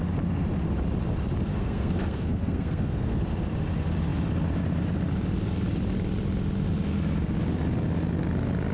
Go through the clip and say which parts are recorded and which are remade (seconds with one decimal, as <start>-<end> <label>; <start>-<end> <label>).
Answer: 0.0-1.5 recorded; 1.5-3.2 remade; 3.2-8.7 recorded